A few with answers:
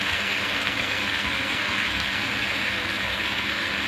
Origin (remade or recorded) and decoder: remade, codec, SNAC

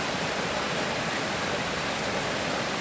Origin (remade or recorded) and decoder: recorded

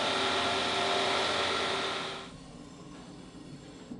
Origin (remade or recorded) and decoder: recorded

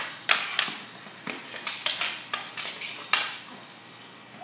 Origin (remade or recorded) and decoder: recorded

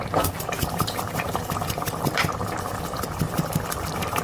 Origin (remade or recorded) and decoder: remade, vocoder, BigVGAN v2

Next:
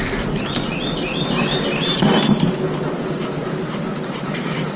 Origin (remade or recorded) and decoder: recorded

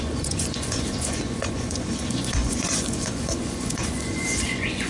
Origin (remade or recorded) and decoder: remade, vocoder, Vocos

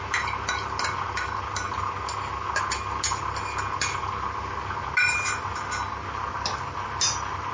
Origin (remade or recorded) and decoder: recorded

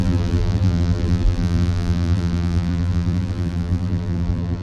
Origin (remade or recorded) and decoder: remade, vocoder, BigVGAN v2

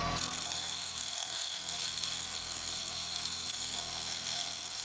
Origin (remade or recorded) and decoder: remade, codec, SNAC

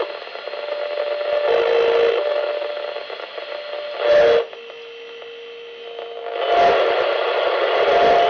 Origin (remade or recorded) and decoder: recorded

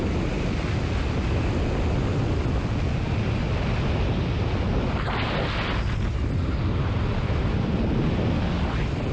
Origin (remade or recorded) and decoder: recorded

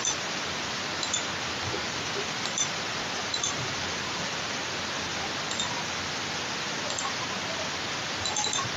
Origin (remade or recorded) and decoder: recorded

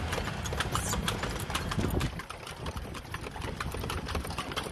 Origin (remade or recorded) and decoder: recorded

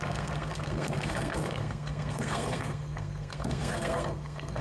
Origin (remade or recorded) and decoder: remade, codec, SNAC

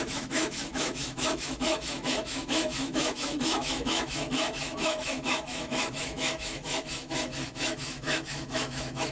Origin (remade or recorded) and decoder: remade, autoencoder, DAC-VAE